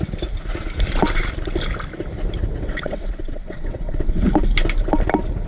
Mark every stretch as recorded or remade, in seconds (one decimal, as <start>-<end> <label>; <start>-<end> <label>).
0.0-2.4 recorded; 2.4-4.3 remade; 4.3-5.5 recorded